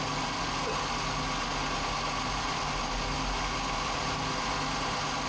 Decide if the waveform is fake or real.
real